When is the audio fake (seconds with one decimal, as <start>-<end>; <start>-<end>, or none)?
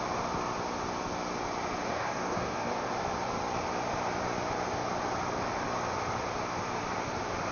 1.9-2.9